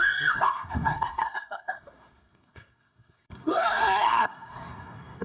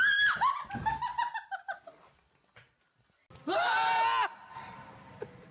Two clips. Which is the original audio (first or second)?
second